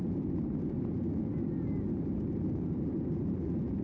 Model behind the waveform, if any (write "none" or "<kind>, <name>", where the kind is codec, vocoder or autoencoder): none